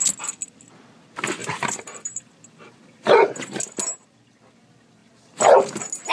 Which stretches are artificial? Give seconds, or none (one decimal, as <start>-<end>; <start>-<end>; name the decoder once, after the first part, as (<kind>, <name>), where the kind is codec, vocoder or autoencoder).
1.4-3.4 (vocoder, BigVGAN v2)